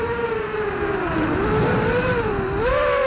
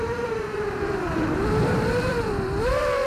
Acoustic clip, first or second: first